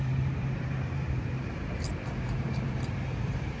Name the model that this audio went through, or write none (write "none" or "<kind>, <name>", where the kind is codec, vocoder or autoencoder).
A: vocoder, BigVGAN v2